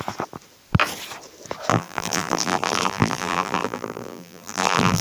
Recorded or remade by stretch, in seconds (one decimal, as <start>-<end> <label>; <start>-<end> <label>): 0.0-1.7 recorded; 1.7-5.0 remade